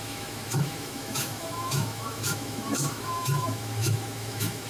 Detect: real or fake fake